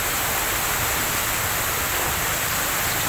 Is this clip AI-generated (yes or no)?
no